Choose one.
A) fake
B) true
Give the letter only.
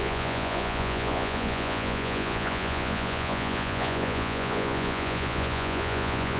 A